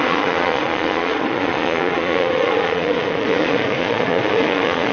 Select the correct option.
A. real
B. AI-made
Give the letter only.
B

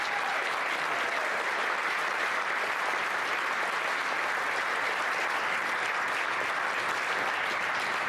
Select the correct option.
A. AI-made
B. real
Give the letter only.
B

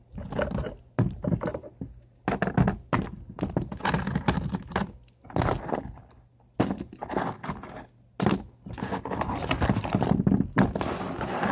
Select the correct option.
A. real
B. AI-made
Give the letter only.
A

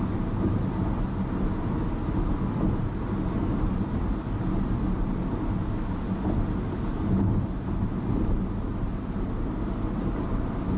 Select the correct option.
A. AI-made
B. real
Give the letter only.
B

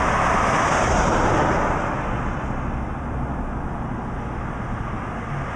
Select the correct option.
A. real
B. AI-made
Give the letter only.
A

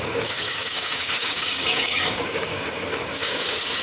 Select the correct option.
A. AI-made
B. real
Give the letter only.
A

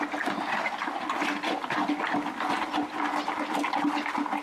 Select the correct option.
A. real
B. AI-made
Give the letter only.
A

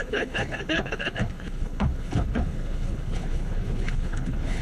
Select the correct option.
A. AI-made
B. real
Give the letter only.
A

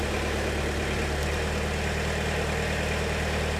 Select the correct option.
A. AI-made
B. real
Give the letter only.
B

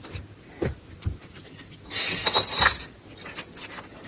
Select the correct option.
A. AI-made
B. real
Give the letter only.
B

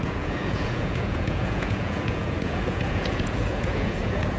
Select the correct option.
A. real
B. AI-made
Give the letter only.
B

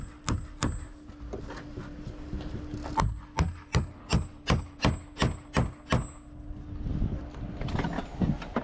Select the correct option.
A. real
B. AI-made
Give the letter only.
A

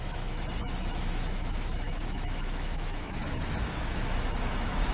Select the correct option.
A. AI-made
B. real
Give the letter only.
A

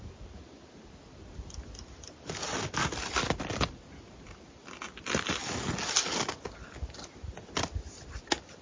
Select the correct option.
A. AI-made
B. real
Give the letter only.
B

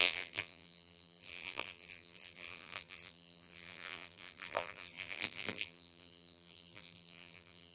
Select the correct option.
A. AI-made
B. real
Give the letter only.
A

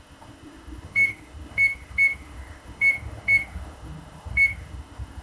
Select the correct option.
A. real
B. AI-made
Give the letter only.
B